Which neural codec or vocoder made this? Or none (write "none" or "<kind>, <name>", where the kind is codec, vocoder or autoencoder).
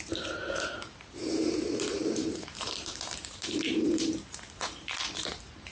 vocoder, BigVGAN v2